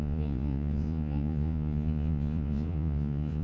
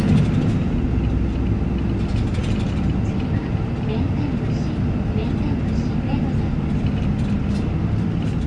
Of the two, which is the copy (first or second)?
first